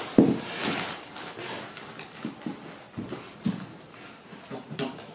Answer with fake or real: real